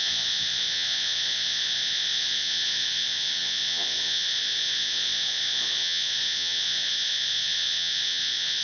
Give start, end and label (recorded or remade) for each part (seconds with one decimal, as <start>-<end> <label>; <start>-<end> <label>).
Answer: 0.0-8.6 remade

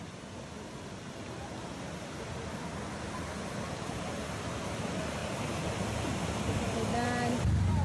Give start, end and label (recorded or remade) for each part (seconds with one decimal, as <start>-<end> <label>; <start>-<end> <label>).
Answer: 0.0-7.8 recorded

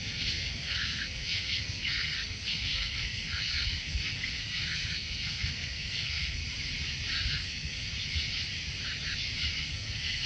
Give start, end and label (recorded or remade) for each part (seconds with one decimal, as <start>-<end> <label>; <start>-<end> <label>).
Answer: 0.0-6.4 remade; 6.4-7.3 recorded; 7.3-7.9 remade; 7.9-9.6 recorded; 9.6-10.3 remade

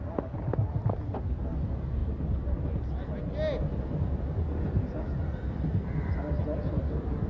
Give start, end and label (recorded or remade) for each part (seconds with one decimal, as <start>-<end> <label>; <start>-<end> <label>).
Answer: 0.0-7.3 recorded

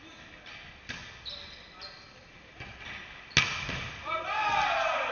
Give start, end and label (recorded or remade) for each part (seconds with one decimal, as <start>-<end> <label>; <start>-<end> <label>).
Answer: 0.0-5.1 recorded